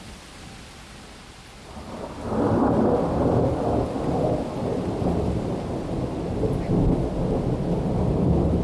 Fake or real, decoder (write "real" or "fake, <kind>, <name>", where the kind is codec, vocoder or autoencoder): real